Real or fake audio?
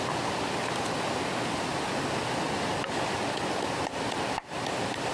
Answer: real